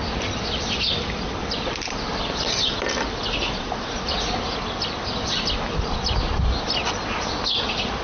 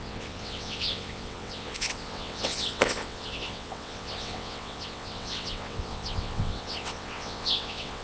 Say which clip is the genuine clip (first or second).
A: first